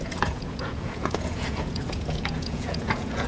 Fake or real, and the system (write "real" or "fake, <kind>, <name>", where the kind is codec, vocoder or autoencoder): fake, vocoder, Vocos